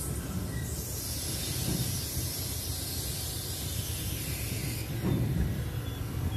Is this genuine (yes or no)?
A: yes